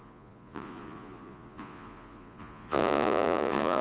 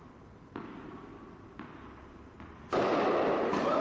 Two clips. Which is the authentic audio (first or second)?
second